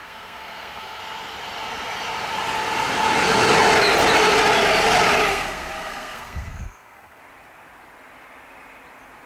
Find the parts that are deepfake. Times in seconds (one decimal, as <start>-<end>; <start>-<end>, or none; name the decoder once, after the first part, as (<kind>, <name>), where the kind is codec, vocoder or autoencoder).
0.0-1.0 (codec, SNAC); 5.3-7.2